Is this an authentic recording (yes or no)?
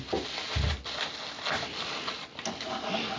yes